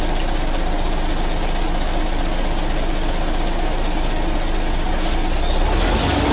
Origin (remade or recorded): recorded